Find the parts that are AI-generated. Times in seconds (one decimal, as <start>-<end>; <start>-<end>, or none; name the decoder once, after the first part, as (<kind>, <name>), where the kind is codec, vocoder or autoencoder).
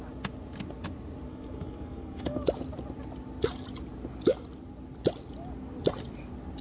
1.3-2.5 (codec, DAC)